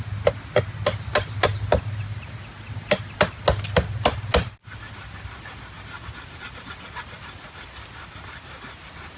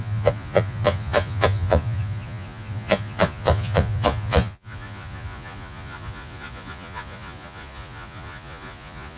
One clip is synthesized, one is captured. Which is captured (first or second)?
first